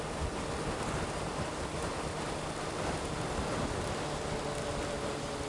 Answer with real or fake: real